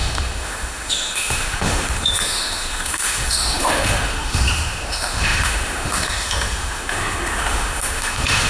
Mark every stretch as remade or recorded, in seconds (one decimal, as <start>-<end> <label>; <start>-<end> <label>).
0.0-8.5 remade